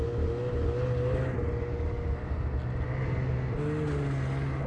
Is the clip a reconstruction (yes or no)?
no